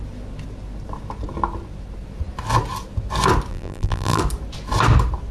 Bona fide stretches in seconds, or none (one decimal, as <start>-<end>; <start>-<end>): 0.0-3.5; 4.2-5.3